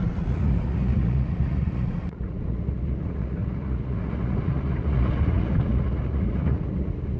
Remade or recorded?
remade